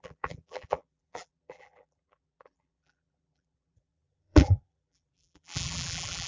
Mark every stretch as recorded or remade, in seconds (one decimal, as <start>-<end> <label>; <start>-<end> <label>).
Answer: 0.0-6.3 remade